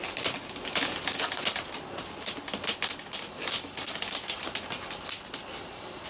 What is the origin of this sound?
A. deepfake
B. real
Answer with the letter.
B